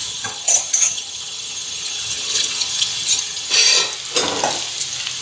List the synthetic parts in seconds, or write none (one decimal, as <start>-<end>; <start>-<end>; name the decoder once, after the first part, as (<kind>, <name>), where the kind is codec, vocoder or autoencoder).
0.0-3.6 (vocoder, HiFi-GAN)